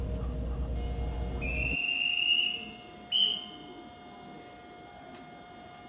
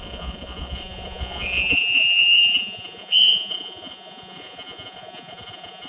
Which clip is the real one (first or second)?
first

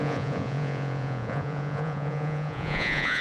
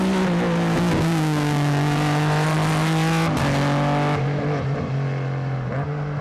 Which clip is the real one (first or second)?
second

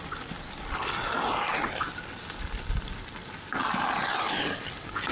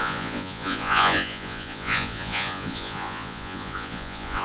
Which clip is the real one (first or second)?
first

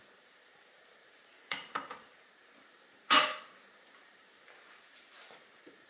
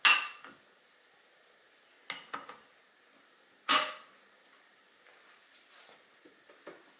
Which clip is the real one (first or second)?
second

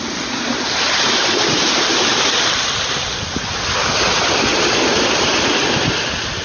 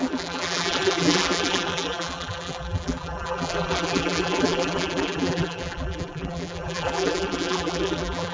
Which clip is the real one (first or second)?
first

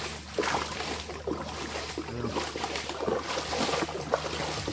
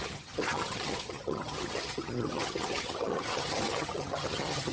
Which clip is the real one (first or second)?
first